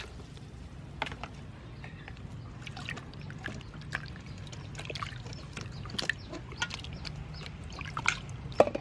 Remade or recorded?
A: recorded